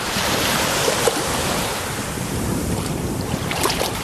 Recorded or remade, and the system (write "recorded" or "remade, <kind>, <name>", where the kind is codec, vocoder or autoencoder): remade, vocoder, BigVGAN v2